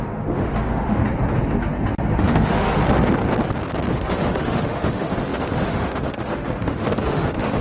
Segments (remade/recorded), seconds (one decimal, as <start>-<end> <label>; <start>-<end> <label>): 0.0-1.0 remade; 1.0-2.2 recorded; 2.2-2.8 remade; 2.8-3.9 recorded; 3.9-7.6 remade